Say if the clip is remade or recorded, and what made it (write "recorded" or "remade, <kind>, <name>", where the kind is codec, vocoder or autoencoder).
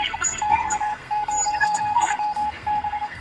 remade, codec, SNAC